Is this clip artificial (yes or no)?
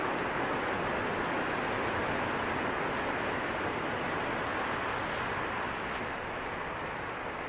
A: no